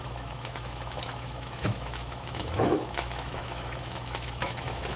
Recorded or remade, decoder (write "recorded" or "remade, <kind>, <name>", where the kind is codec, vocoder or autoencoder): remade, autoencoder, DAC-VAE